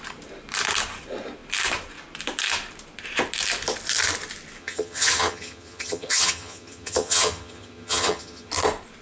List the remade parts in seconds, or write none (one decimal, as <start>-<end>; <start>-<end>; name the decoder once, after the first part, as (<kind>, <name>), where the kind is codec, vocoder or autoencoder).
4.6-8.5 (vocoder, HiFi-GAN)

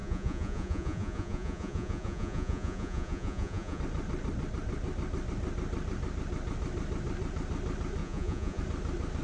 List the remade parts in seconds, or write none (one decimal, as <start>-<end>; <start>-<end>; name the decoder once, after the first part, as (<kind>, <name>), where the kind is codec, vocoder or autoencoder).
0.0-3.8 (vocoder, Vocos); 8.0-8.6

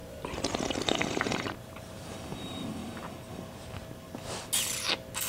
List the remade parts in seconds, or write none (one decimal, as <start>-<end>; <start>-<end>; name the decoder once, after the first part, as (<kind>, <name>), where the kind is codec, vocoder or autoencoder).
0.0-2.8 (vocoder, BigVGAN v2)

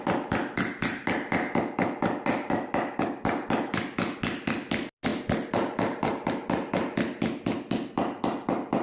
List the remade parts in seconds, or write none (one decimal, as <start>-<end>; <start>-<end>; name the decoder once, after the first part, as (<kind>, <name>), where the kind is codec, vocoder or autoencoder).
none

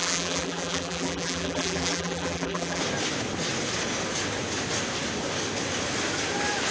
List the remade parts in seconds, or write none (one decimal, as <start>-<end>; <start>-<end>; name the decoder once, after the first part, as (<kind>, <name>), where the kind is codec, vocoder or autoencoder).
0.0-2.8 (vocoder, BigVGAN v2)

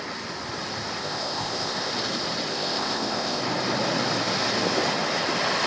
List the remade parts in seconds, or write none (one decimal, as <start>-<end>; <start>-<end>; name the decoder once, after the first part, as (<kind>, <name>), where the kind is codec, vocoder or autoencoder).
1.0-1.9 (codec, ZipCodec); 2.5-3.4